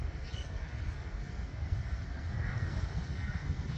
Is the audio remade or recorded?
remade